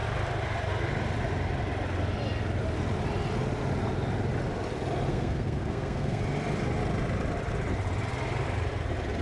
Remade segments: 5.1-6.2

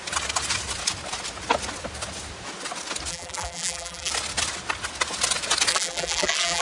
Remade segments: 3.1-4.1; 5.7-6.6

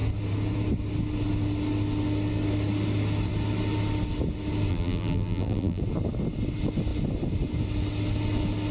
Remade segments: 4.7-5.8